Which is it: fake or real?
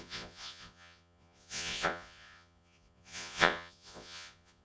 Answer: fake